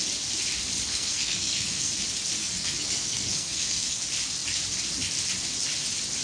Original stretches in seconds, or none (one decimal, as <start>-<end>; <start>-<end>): 0.0-0.9; 1.9-2.4; 4.0-6.2